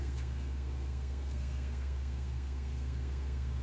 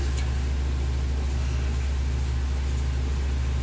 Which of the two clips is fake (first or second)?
first